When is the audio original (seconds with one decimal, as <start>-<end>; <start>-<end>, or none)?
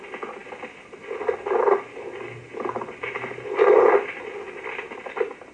0.0-5.5